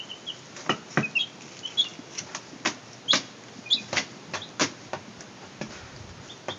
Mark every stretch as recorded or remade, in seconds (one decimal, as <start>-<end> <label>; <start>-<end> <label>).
0.0-6.6 recorded